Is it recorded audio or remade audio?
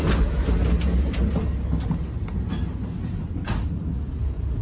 recorded